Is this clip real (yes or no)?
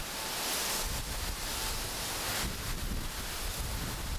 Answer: yes